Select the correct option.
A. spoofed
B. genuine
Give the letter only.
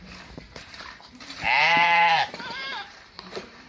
A